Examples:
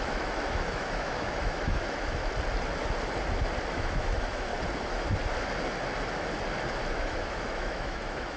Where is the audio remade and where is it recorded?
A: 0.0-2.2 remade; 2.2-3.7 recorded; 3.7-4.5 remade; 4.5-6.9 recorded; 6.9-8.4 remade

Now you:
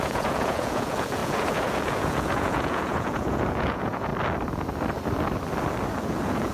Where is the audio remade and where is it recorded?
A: 0.0-4.1 remade; 4.1-6.0 recorded; 6.0-6.5 remade